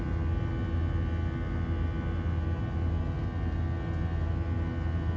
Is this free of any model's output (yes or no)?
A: yes